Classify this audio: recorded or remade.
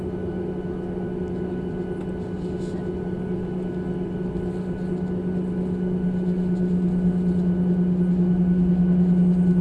recorded